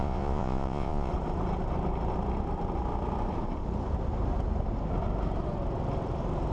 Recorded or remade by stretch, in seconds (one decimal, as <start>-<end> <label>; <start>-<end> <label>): 0.0-1.1 remade; 1.1-6.5 recorded